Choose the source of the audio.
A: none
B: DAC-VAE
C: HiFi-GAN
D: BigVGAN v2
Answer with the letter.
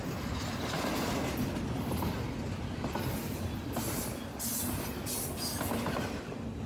A